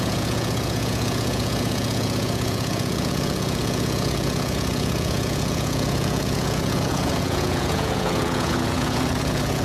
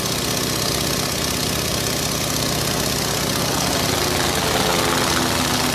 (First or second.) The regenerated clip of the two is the first